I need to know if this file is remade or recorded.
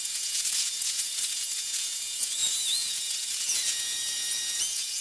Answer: remade